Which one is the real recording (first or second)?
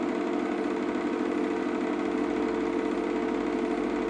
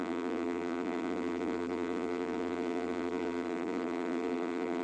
first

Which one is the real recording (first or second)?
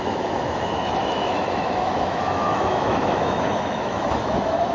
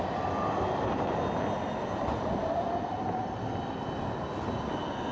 second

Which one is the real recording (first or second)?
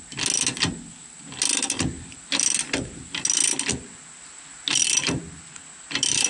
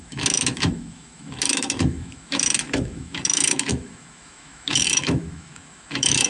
first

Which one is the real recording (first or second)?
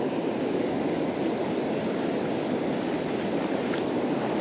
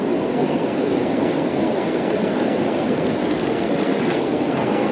first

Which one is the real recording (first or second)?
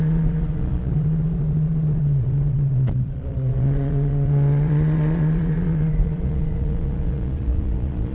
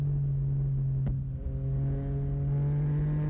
second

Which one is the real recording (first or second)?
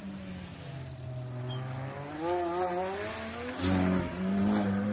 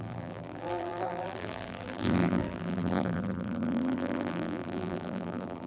first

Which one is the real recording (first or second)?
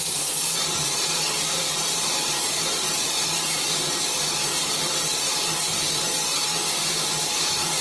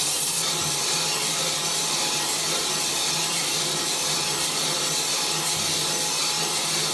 second